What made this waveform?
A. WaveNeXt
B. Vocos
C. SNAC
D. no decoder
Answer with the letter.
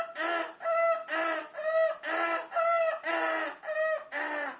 D